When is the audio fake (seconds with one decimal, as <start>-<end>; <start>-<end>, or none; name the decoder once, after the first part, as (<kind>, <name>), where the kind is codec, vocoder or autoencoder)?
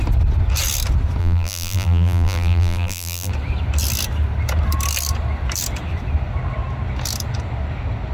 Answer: 1.2-3.3 (vocoder, BigVGAN v2)